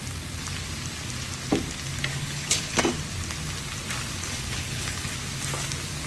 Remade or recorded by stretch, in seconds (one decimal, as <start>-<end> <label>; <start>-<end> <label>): 0.0-2.1 recorded; 2.1-2.8 remade; 2.8-4.2 recorded; 4.2-5.1 remade; 5.1-6.1 recorded